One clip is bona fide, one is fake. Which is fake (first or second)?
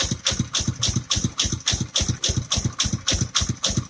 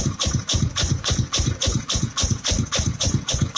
second